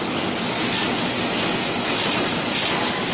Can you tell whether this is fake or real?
real